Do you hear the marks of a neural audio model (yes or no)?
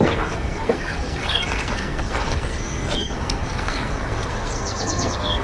yes